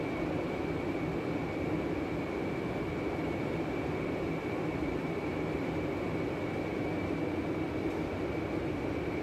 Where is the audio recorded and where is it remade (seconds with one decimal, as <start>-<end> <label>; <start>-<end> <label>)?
0.0-9.2 recorded